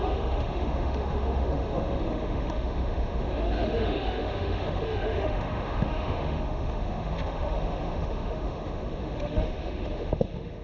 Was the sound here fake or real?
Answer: fake